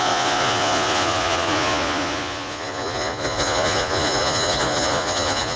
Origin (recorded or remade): remade